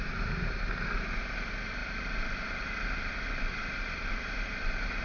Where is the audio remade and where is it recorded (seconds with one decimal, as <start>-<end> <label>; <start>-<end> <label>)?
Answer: 0.0-5.0 recorded

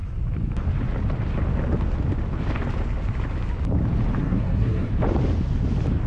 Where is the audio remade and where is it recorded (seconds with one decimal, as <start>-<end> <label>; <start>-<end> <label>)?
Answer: 0.0-4.2 recorded; 4.2-4.9 remade; 4.9-6.1 recorded

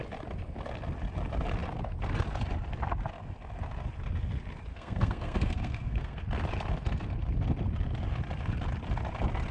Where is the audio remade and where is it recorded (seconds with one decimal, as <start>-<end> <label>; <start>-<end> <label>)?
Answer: 0.0-4.7 recorded; 4.7-6.2 remade; 6.2-9.5 recorded

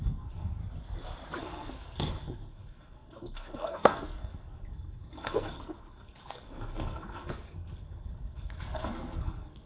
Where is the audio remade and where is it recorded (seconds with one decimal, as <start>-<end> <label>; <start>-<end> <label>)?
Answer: 0.0-0.6 remade; 0.6-1.4 recorded; 1.4-9.7 remade

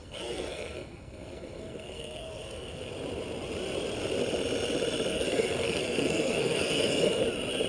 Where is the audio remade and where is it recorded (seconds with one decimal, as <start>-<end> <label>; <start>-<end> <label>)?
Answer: 0.0-2.9 remade; 2.9-5.1 recorded; 5.1-7.2 remade; 7.2-7.7 recorded

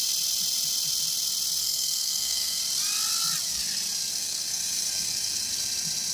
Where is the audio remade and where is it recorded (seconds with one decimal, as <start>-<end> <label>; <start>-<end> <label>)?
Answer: 0.0-1.6 recorded; 1.6-2.6 remade; 2.6-4.1 recorded; 4.1-5.5 remade; 5.5-6.1 recorded

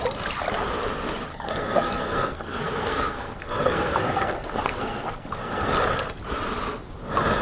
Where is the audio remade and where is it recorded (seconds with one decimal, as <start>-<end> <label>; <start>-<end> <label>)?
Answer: 0.0-1.3 recorded; 1.3-5.7 remade; 5.7-7.4 recorded